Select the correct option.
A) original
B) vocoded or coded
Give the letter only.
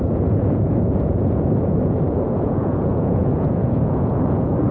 B